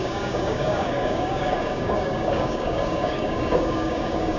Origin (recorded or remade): remade